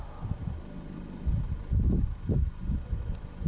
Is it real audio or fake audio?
real